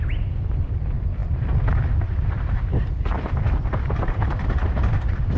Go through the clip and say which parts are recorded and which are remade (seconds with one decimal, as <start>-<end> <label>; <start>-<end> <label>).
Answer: 0.0-5.4 remade